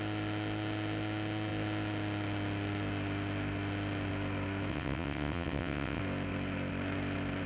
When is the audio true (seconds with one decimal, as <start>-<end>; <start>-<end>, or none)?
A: 0.0-4.7; 6.0-7.5